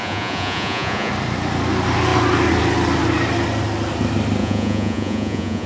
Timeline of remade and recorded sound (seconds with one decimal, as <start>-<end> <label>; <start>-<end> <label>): 0.0-1.1 remade; 1.1-4.4 recorded; 4.4-5.7 remade